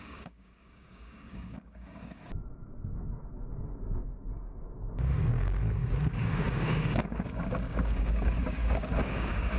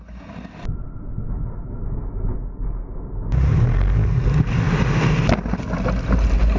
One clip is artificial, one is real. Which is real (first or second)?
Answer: second